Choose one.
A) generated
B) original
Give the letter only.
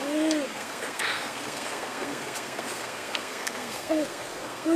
A